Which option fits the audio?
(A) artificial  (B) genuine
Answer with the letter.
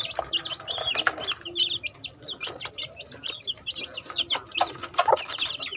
B